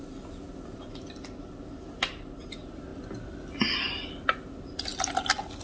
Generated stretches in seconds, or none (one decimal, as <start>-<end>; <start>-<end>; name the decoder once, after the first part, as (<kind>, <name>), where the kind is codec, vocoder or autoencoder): none